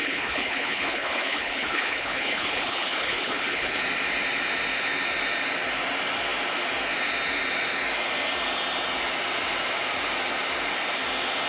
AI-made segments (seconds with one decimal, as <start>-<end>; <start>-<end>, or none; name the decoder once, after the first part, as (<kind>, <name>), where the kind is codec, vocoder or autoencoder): 0.0-3.8 (codec, HILCodec)